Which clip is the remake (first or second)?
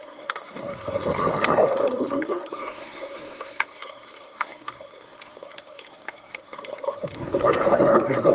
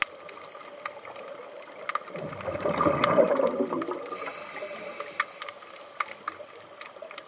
first